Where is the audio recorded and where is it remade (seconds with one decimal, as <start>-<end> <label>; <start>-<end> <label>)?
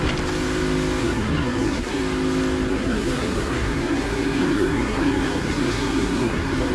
0.0-1.0 recorded; 1.0-2.0 remade; 2.0-2.7 recorded; 2.7-6.7 remade